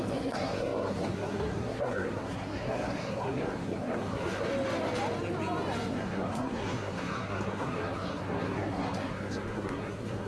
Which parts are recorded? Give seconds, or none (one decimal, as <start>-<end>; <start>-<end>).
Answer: 4.5-5.9